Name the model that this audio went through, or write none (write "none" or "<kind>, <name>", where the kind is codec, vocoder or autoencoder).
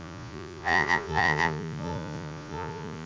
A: vocoder, Vocos